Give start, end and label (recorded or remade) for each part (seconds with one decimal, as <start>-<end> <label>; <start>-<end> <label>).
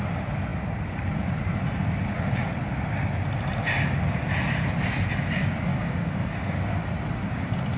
0.0-5.7 recorded; 5.7-6.6 remade; 6.6-7.8 recorded